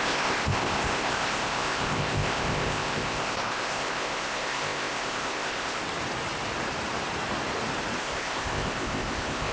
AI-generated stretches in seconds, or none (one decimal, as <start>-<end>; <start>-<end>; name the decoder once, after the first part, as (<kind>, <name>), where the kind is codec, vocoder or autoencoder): 0.0-5.8 (codec, ZipCodec); 8.0-9.5